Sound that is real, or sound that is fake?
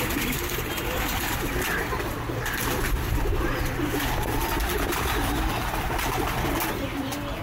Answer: real